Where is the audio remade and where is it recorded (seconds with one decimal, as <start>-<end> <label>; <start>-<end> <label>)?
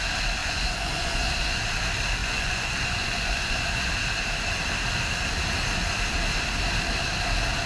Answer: 0.0-0.4 recorded; 0.4-1.6 remade; 1.6-2.2 recorded; 2.2-3.9 remade; 3.9-7.7 recorded